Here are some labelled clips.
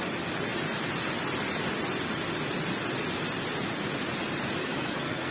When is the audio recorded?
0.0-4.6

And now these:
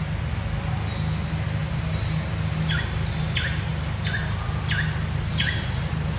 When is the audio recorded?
0.0-6.2

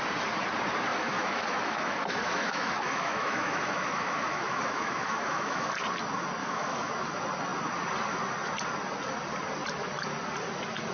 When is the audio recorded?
0.0-0.9; 5.7-6.4; 6.9-10.9

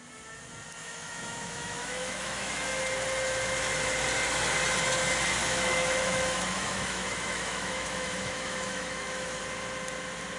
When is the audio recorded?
0.0-0.8; 2.8-5.4; 9.4-10.4